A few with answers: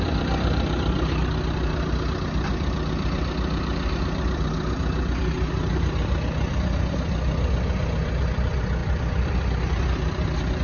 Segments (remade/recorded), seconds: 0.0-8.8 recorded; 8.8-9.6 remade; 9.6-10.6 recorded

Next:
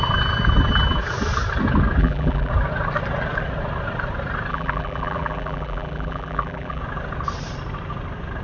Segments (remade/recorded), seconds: 0.0-2.0 recorded; 2.0-2.5 remade; 2.5-4.5 recorded; 4.5-6.8 remade; 6.8-8.4 recorded

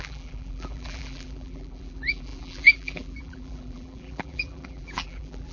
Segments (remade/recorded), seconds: 0.0-5.5 remade

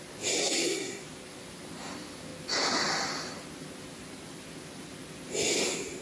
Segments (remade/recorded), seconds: 0.0-0.4 recorded; 0.4-1.0 remade; 1.0-6.0 recorded

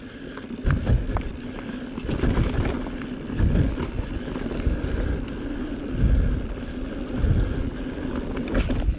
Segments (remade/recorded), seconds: 0.0-9.0 recorded

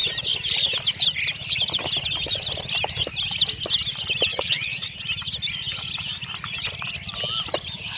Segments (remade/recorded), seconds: 0.0-4.3 recorded; 4.3-5.0 remade; 5.0-8.0 recorded